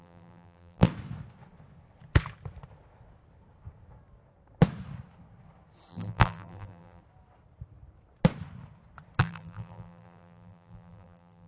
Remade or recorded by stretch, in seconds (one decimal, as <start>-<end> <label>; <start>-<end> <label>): 0.0-0.9 remade; 0.9-5.9 recorded; 5.9-7.0 remade; 7.0-9.2 recorded; 9.2-11.5 remade